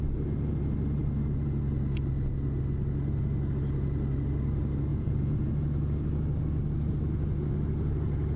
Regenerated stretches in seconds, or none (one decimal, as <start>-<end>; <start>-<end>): 4.9-5.5

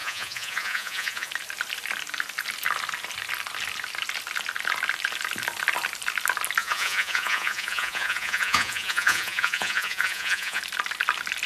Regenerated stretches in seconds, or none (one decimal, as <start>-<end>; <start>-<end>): 0.0-1.3; 6.6-10.6

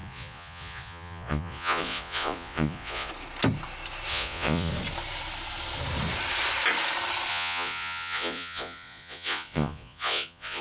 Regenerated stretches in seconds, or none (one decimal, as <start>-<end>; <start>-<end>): 0.0-3.1; 4.1-4.7; 7.3-10.6

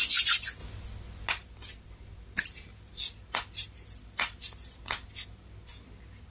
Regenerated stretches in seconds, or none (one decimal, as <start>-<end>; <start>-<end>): none

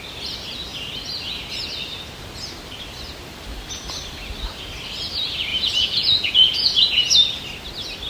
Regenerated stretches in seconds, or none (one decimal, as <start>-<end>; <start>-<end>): 5.5-7.0